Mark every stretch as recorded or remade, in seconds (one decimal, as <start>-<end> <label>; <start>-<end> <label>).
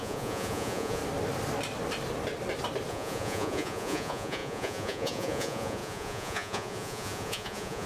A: 0.0-1.0 remade; 1.0-2.9 recorded; 2.9-7.9 remade